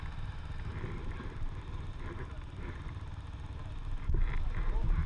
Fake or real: real